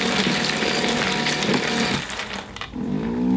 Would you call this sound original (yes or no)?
yes